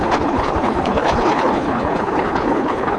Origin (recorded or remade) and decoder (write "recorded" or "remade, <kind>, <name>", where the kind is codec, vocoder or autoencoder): remade, codec, HILCodec